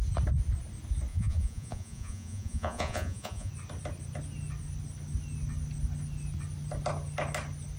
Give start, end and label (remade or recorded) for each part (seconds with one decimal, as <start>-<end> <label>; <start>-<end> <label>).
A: 0.0-1.1 recorded; 1.1-3.5 remade; 3.5-7.8 recorded